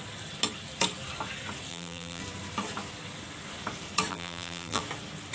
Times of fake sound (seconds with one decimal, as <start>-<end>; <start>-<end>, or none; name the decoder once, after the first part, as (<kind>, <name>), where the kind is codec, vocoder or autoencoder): 1.7-2.2 (vocoder, BigVGAN v2); 4.1-4.8

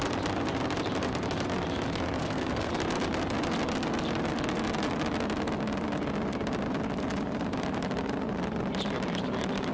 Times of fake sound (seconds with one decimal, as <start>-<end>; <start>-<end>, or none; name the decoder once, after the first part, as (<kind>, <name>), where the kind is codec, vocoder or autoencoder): 2.2-2.7 (codec, SNAC)

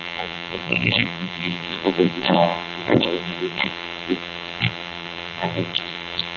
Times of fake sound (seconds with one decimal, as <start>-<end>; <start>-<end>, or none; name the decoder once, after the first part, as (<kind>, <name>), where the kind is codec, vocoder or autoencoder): 0.0-6.4 (vocoder, BigVGAN v2)

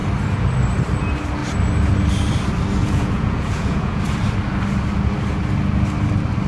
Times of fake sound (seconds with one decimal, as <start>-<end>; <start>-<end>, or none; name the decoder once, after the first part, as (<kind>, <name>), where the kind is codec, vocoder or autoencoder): 2.8-4.0 (vocoder, Vocos)

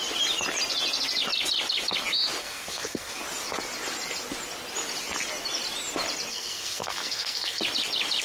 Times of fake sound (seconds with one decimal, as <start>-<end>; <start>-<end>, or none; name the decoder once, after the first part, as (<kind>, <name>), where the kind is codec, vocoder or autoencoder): 2.4-3.2 (codec, SNAC); 6.3-7.6

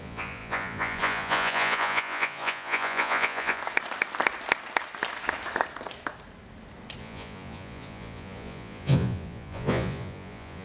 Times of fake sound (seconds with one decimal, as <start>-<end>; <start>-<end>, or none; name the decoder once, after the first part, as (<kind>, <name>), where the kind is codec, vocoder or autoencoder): 0.0-3.6 (vocoder, Vocos); 7.0-10.6

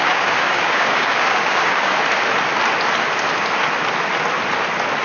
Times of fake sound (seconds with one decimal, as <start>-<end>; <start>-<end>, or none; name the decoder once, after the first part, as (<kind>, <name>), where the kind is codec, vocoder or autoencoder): 0.0-2.0 (codec, DAC)